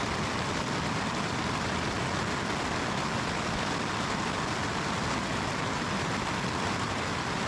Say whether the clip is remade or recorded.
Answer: recorded